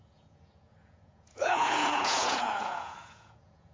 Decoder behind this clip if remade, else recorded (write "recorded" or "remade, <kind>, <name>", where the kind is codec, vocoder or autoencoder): remade, vocoder, Vocos